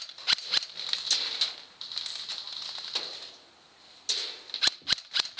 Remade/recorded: recorded